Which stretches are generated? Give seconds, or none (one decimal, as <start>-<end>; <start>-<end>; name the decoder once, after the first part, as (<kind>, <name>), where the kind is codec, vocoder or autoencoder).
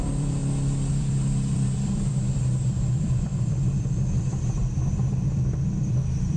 0.0-0.4 (vocoder, BigVGAN v2); 0.9-6.4